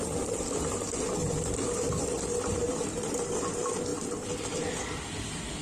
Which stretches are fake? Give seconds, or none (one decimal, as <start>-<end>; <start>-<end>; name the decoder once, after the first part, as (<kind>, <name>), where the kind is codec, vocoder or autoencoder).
1.2-3.3 (vocoder, BigVGAN v2); 3.9-4.8